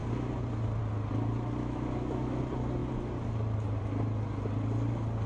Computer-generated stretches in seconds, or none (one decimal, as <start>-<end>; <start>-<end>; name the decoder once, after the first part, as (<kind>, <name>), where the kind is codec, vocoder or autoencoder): 1.6-2.4 (autoencoder, DAC-VAE)